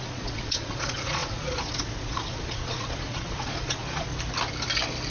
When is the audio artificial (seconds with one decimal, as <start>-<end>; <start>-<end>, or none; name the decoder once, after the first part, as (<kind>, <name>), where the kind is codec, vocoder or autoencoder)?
0.0-4.1 (vocoder, Vocos)